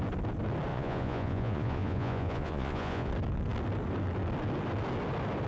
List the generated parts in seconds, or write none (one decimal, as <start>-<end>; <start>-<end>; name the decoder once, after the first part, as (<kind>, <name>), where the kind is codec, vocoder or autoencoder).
0.7-3.1 (vocoder, Vocos)